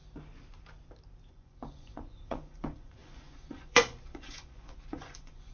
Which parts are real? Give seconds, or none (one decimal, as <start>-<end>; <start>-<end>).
0.0-1.3